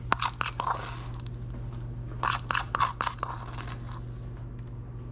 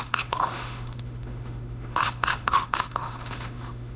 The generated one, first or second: second